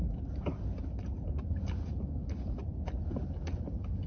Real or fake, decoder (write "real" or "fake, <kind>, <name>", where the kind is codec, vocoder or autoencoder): real